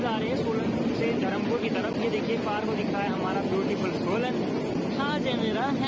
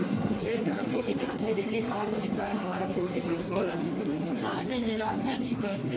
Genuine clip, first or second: first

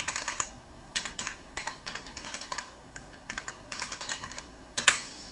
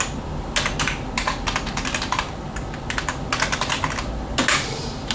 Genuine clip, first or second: second